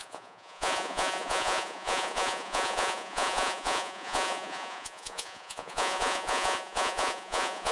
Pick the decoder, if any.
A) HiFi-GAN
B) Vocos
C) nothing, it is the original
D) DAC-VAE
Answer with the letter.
B